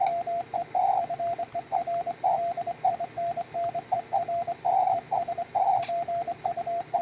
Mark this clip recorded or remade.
recorded